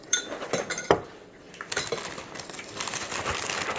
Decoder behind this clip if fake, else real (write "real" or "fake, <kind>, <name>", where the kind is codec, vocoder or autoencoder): fake, vocoder, BigVGAN v2